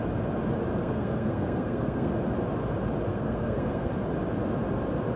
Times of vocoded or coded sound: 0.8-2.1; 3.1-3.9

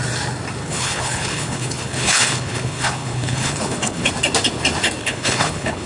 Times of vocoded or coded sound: 0.6-4.1; 5.0-5.9

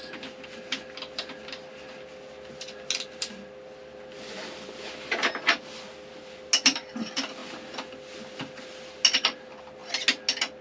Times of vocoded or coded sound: none

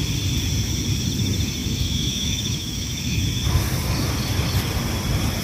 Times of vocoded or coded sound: 1.6-3.2

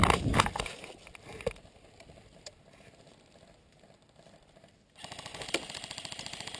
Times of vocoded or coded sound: none

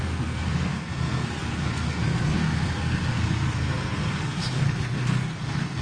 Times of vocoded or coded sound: 0.0-5.8